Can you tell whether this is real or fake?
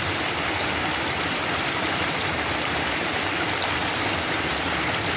fake